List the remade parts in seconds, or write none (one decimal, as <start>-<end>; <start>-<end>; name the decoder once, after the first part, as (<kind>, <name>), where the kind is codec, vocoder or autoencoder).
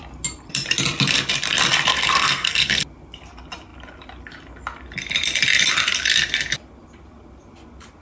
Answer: 1.9-2.8 (codec, SNAC)